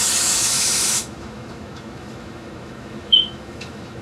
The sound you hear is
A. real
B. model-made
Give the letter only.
B